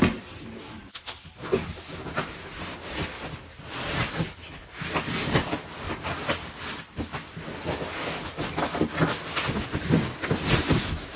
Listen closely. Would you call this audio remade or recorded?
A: recorded